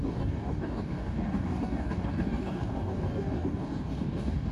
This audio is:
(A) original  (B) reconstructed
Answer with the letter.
B